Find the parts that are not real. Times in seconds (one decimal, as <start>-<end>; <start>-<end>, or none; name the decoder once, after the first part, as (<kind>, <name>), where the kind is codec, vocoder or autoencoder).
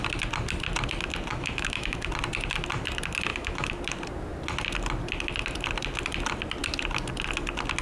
1.3-2.1 (autoencoder, DAC-VAE); 3.3-3.8